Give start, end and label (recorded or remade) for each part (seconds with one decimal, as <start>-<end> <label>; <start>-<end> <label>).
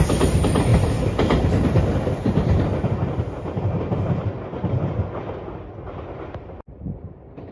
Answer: 0.0-7.5 recorded